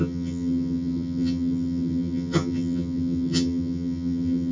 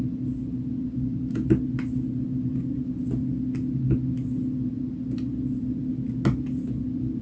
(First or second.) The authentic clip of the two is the second